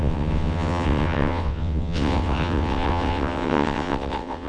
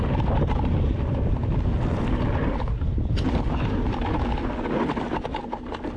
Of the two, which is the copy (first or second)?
first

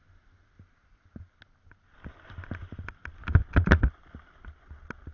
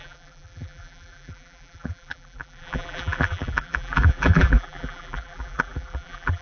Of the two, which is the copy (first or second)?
second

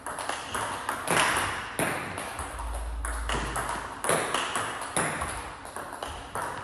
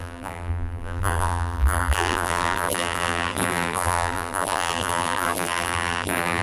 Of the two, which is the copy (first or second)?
second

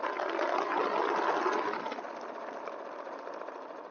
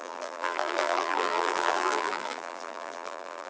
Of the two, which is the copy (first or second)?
second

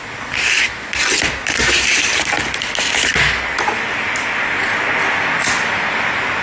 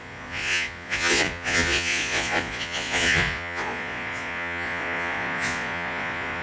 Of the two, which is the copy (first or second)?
second